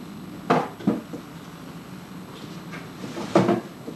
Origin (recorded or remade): recorded